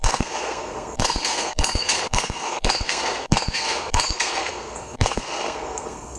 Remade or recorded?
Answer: remade